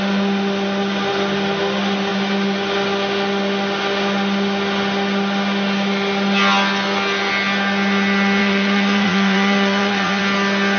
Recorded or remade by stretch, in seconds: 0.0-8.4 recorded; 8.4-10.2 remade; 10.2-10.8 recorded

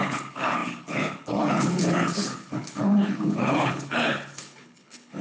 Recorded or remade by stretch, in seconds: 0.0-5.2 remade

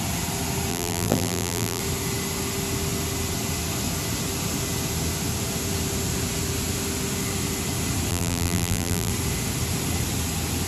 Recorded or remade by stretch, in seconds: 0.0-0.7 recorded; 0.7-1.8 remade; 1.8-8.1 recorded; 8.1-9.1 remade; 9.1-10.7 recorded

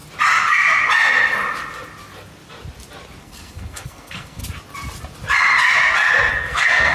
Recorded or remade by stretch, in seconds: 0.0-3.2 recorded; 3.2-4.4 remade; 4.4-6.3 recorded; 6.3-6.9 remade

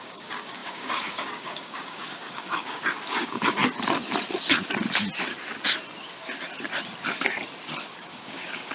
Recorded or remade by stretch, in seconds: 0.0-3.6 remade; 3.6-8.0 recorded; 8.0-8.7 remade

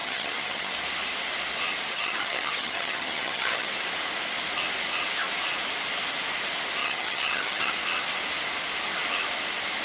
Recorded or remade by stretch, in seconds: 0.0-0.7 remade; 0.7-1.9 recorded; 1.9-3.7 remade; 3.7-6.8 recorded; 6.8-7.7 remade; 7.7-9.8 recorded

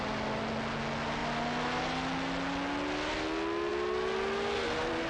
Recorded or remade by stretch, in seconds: 0.0-5.1 recorded